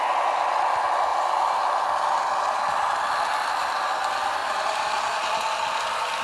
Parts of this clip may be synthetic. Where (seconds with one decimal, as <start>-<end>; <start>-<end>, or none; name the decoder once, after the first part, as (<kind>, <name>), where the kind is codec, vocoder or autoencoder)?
1.1-1.6 (vocoder, BigVGAN v2); 4.4-4.9